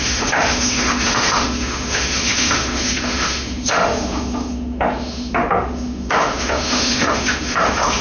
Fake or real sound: fake